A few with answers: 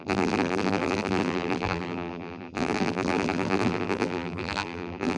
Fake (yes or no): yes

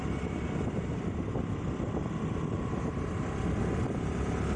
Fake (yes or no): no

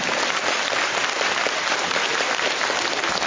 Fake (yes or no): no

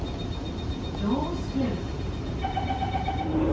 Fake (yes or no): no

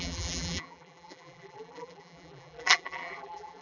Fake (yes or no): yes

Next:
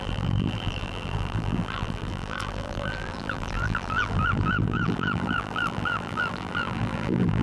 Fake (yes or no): yes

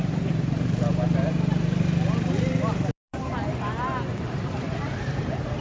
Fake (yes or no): yes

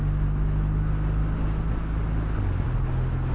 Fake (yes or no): no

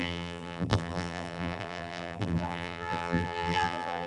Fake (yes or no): yes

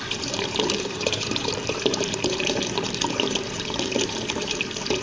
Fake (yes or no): yes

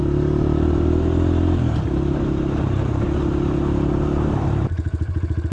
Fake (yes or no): yes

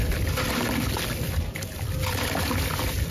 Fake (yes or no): no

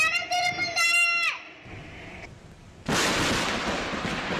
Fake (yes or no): no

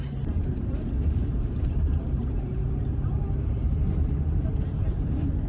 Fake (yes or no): yes